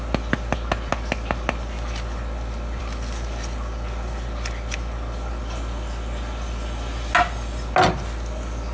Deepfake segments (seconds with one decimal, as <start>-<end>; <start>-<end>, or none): none